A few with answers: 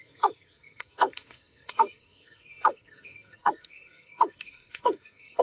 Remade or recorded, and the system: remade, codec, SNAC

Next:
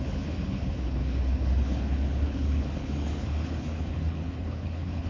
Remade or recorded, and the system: remade, codec, HILCodec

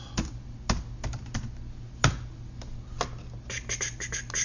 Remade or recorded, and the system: recorded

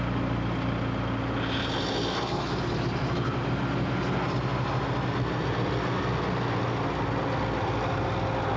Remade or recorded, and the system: recorded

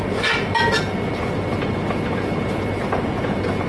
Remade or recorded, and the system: recorded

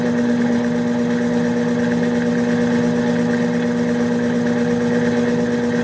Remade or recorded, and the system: recorded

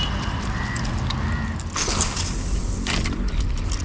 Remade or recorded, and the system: recorded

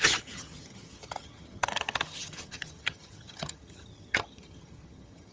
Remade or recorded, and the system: remade, vocoder, HiFi-GAN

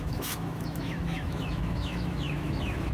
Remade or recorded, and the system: remade, autoencoder, DAC-VAE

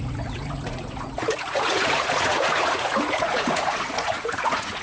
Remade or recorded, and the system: remade, vocoder, Vocos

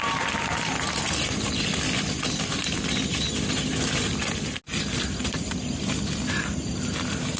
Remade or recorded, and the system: recorded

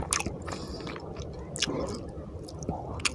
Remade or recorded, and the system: recorded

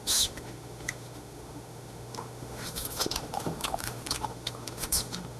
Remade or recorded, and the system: remade, autoencoder, DAC-VAE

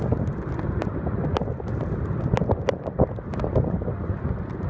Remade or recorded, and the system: recorded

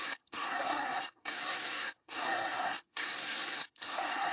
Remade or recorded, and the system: remade, codec, SNAC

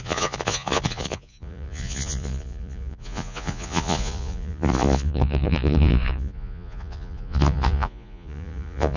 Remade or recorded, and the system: remade, vocoder, Vocos